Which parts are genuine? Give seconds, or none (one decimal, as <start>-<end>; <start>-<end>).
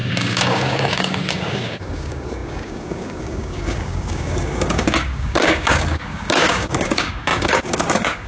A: none